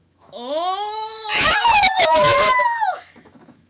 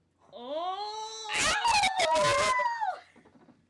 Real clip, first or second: second